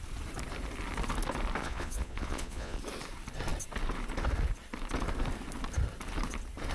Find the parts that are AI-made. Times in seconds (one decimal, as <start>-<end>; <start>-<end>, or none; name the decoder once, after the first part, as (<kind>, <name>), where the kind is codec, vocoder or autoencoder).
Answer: 1.6-2.8 (vocoder, Vocos)